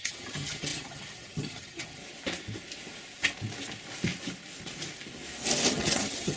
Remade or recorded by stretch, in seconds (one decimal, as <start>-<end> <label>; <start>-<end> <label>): 0.0-2.0 remade; 2.0-5.7 recorded; 5.7-6.4 remade